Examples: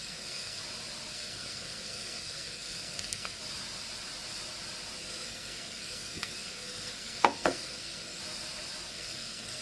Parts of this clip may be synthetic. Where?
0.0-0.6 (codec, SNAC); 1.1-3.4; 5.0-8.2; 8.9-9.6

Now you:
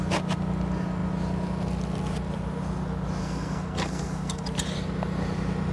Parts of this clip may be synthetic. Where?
3.2-4.4 (codec, SNAC)

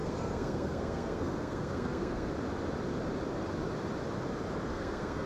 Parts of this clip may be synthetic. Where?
0.0-2.3 (codec, SNAC); 4.7-5.3

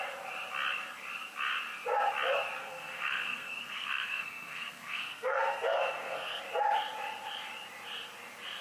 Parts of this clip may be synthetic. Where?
2.6-6.4 (codec, SNAC)

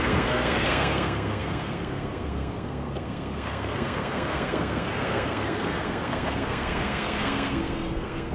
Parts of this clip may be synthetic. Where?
0.0-8.3 (codec, SNAC)

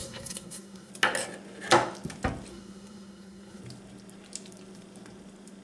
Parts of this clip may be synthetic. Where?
0.0-0.9 (codec, SNAC); 2.5-3.6

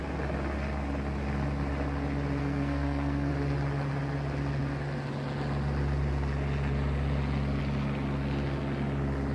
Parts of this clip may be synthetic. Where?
2.4-3.3 (codec, SNAC)

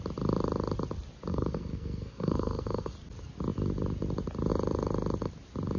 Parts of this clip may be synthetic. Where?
1.3-2.9 (codec, SNAC)